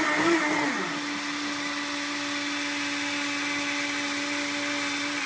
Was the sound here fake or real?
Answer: real